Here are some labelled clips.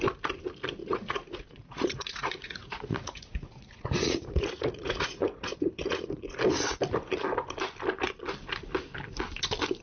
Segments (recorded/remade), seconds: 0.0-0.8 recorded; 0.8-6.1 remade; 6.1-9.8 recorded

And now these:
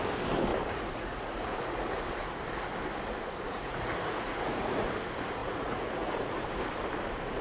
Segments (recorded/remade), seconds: 0.0-0.5 recorded; 0.5-2.4 remade; 2.4-3.5 recorded; 3.5-4.8 remade; 4.8-5.4 recorded; 5.4-6.3 remade; 6.3-7.4 recorded

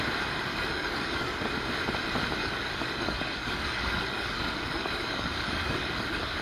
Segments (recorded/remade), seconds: 0.0-0.5 recorded; 0.5-1.5 remade; 1.5-2.4 recorded; 2.4-6.4 remade

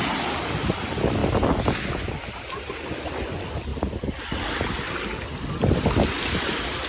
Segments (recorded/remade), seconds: 0.0-6.9 recorded